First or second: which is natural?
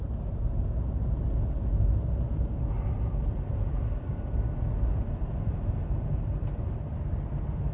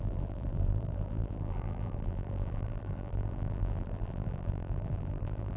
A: first